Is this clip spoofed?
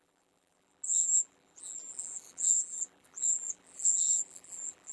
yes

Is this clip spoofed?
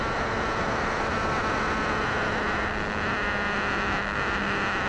no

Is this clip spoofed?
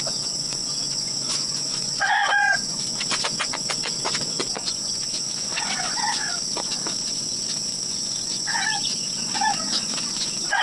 yes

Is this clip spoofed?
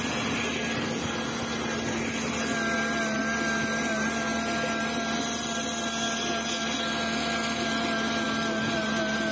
no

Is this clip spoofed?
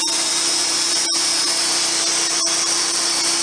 no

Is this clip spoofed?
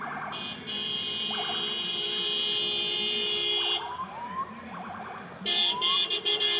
no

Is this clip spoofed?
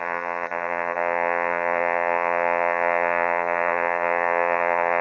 yes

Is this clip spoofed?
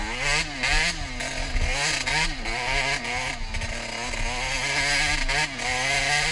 no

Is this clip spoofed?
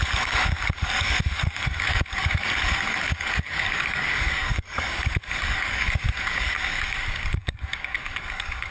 yes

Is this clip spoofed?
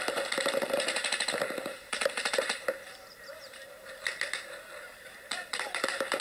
yes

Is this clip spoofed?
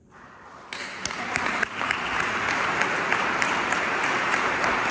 yes